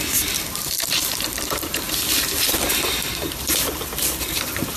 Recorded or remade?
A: remade